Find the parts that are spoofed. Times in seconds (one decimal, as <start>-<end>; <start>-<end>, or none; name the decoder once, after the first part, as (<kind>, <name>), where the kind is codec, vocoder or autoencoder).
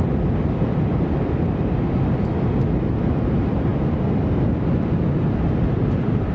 0.0-1.2 (vocoder, BigVGAN v2); 3.1-3.7; 5.6-6.3